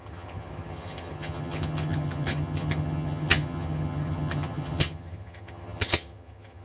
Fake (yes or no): yes